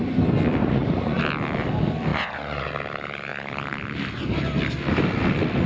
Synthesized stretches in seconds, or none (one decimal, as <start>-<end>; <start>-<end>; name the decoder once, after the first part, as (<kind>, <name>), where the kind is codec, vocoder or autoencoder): 0.6-1.2 (vocoder, Vocos); 2.1-2.7